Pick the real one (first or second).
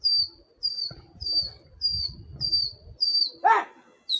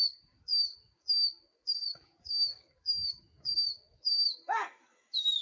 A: first